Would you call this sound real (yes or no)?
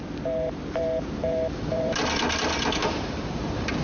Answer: no